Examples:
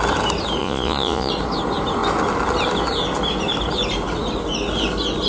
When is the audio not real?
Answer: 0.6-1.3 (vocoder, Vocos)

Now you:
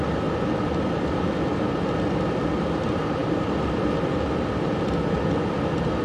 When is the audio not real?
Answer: none

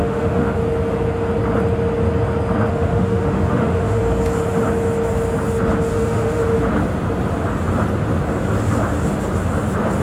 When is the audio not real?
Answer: 0.0-0.6 (autoencoder, DAC-VAE); 2.7-4.0; 5.9-6.4

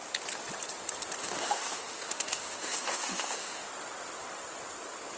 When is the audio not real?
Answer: 1.2-3.7 (autoencoder, DAC-VAE)

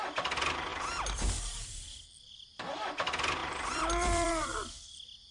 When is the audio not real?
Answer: 0.7-2.3 (vocoder, BigVGAN v2); 3.4-4.3

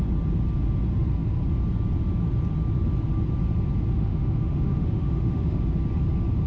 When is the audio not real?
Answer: 3.9-5.6 (autoencoder, DAC-VAE)